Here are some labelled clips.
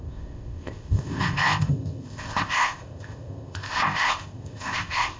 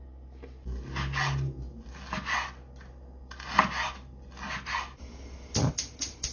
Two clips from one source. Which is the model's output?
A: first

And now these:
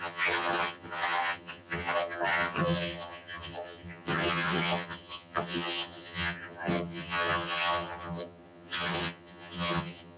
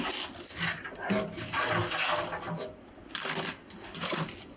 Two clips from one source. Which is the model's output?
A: first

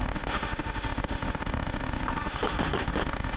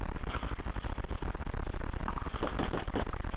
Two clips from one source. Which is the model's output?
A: first